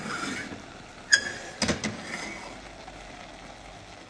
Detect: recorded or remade recorded